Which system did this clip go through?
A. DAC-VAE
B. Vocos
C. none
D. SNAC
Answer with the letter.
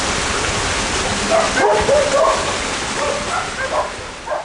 C